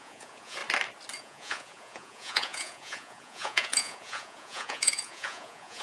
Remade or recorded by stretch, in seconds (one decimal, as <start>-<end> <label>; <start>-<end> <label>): 0.0-0.6 remade; 0.6-1.2 recorded; 1.2-5.8 remade